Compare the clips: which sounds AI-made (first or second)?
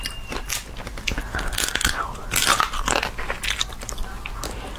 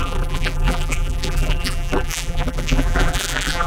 second